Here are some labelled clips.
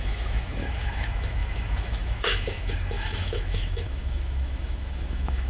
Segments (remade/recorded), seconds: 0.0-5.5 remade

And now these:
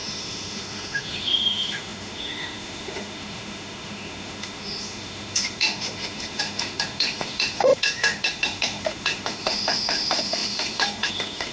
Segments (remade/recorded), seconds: 0.0-11.5 remade

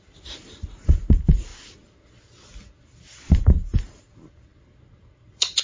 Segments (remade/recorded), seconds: 0.0-5.6 recorded